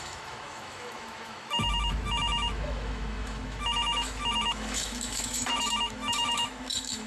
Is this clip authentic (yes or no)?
no